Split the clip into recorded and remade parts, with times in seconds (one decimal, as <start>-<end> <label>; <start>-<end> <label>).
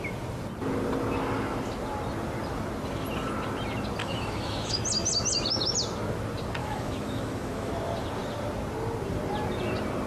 0.0-4.0 recorded; 4.0-4.8 remade; 4.8-6.6 recorded; 6.6-7.7 remade; 7.7-10.1 recorded